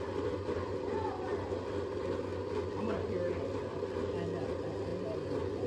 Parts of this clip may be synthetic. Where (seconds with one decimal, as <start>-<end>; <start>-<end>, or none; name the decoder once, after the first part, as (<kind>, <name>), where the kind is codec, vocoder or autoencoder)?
0.0-2.3 (vocoder, BigVGAN v2); 4.5-5.7